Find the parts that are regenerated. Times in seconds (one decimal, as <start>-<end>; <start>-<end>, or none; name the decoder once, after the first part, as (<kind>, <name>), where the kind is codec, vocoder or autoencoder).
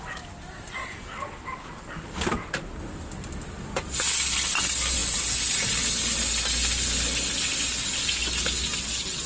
none